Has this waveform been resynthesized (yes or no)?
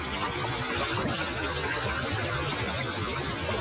no